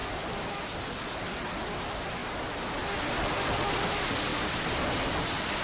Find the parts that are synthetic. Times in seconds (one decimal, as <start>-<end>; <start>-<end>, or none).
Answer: none